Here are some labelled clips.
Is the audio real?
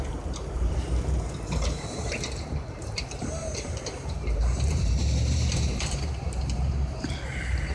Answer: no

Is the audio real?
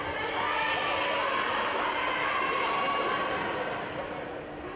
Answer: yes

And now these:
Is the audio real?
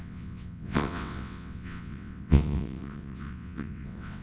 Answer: no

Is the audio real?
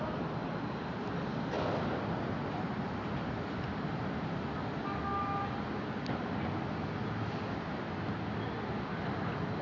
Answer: yes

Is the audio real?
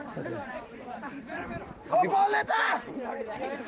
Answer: no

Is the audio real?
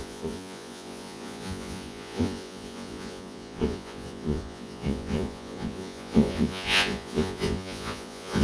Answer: no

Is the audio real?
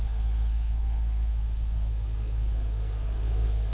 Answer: no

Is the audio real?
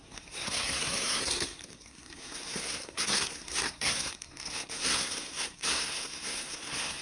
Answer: no